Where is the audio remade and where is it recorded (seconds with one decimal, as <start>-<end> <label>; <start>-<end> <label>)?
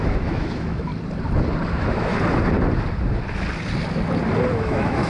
0.0-0.9 remade; 0.9-1.7 recorded; 1.7-2.1 remade; 2.1-4.5 recorded; 4.5-5.1 remade